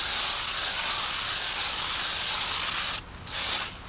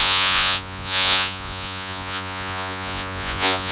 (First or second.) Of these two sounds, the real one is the first